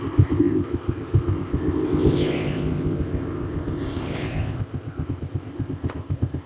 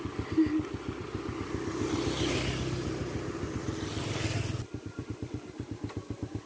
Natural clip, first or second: second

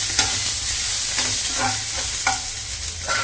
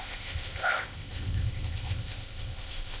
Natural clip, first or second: first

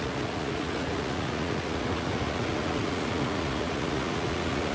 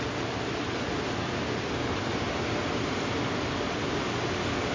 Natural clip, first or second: second